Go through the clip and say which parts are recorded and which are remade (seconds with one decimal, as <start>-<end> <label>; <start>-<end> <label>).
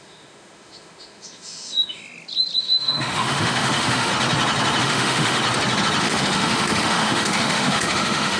0.0-2.0 remade; 2.0-2.6 recorded; 2.6-4.1 remade; 4.1-4.8 recorded; 4.8-5.4 remade; 5.4-6.0 recorded; 6.0-8.4 remade